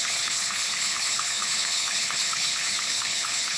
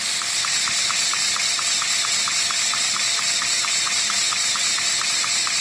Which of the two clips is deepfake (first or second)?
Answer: first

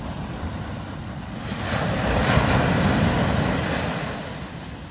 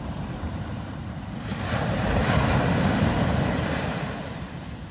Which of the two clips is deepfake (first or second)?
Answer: second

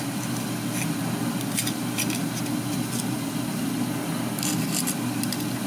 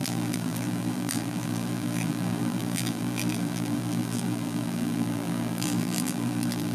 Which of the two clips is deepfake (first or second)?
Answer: second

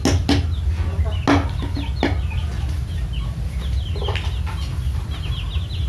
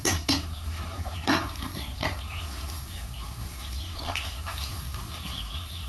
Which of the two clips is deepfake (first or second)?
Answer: second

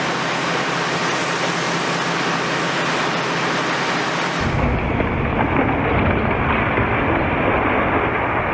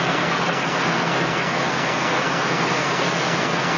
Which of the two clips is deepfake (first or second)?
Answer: second